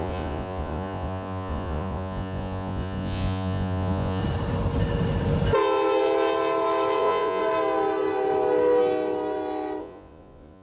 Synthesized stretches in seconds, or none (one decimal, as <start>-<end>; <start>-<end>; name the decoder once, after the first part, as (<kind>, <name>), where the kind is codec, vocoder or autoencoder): 0.0-4.2 (vocoder, Vocos); 7.0-7.4; 9.8-10.6